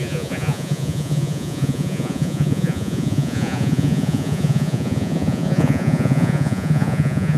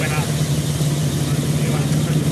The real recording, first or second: second